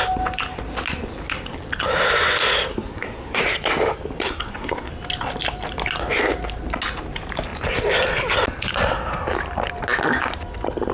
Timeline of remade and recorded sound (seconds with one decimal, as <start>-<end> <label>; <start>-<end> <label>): 0.0-2.7 recorded; 2.7-3.4 remade; 3.4-4.2 recorded; 4.2-4.9 remade; 4.9-10.9 recorded